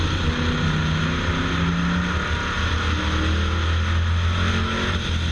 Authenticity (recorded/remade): recorded